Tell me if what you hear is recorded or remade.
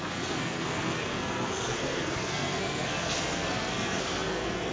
remade